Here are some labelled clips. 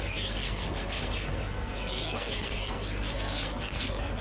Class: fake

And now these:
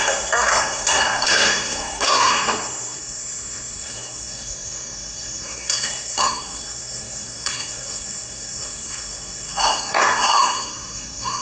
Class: fake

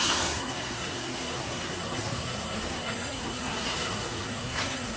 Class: fake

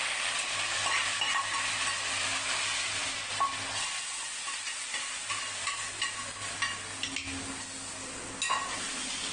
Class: real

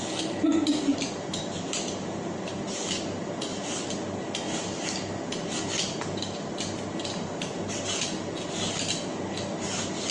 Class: real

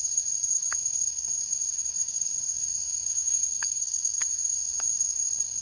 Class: fake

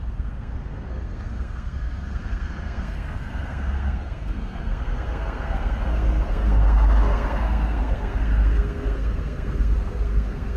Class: fake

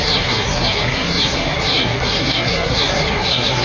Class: fake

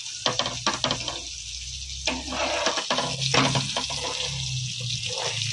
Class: real